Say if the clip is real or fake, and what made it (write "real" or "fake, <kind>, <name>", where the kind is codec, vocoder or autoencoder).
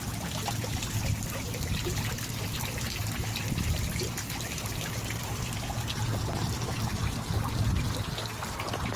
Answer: real